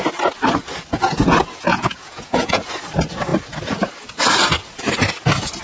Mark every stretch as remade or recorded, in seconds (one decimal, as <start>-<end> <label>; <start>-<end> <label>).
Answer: 0.0-1.7 recorded; 1.7-2.6 remade; 2.6-5.6 recorded